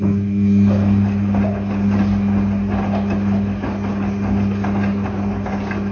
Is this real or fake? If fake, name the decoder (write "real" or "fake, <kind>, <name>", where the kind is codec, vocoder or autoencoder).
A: real